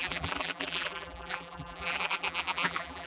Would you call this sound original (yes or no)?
no